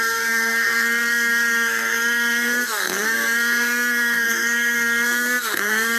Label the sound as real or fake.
fake